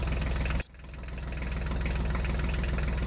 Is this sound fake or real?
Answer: real